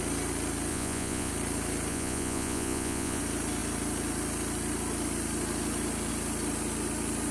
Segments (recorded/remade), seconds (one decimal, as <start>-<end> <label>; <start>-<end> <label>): 0.0-0.7 recorded; 0.7-1.3 remade; 1.3-1.9 recorded; 1.9-3.2 remade; 3.2-7.3 recorded